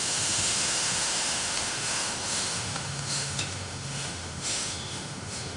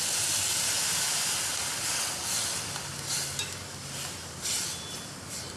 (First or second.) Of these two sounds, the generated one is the first